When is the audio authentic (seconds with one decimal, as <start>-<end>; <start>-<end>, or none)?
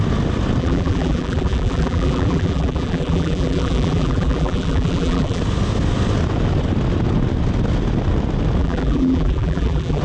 0.0-0.6; 5.4-8.6